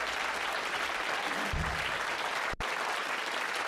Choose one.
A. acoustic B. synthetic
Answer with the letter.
A